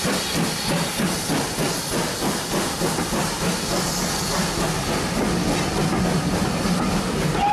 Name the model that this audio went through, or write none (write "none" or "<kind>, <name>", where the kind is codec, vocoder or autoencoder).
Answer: none